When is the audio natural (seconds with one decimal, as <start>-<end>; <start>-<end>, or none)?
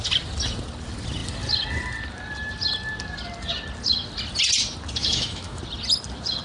0.0-5.0; 5.6-6.4